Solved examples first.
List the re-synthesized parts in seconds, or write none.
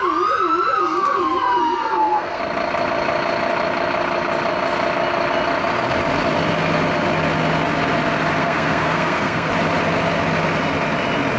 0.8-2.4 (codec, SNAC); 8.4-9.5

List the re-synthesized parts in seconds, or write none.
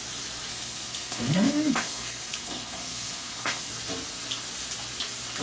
0.5-3.7 (codec, SNAC)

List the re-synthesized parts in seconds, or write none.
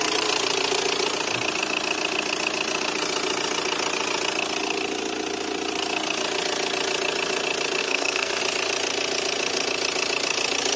7.8-8.4 (codec, SNAC)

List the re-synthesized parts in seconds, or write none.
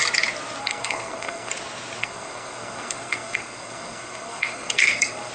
0.6-1.5 (codec, SNAC); 2.0-5.3